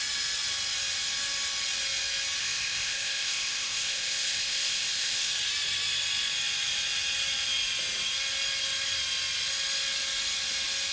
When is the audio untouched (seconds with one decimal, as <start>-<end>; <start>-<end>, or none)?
0.0-2.4; 5.3-10.9